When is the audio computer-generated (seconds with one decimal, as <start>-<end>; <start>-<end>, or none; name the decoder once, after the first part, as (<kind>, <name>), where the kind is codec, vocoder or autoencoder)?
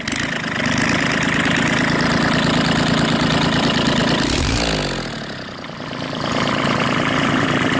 none